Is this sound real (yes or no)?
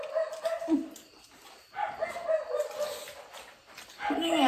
yes